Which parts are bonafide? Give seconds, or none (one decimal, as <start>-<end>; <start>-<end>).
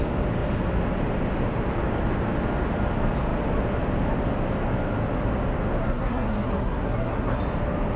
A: 0.0-5.8; 7.4-8.0